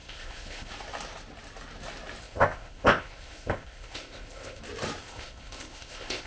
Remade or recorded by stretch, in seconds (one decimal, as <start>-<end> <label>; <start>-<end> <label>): 0.0-0.7 remade; 0.7-2.2 recorded; 2.2-4.6 remade; 4.6-5.0 recorded; 5.0-6.3 remade